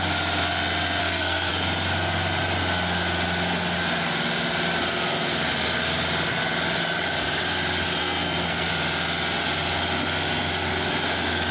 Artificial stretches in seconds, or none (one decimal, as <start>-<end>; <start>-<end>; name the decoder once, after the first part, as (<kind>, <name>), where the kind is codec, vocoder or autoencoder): 1.0-1.5 (codec, SNAC); 8.0-8.7